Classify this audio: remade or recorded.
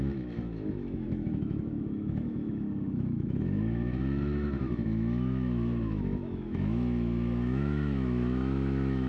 remade